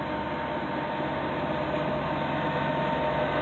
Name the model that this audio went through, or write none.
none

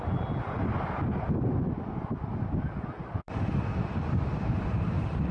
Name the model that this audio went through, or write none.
none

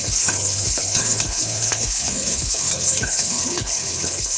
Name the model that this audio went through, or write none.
codec, HILCodec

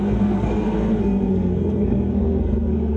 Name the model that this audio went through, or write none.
codec, SNAC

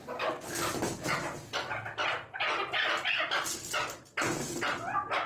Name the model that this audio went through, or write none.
none